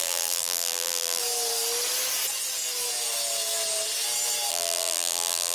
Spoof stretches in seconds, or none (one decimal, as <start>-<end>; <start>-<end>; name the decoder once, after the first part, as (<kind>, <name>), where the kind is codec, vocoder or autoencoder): 0.0-1.2 (vocoder, BigVGAN v2); 4.5-5.5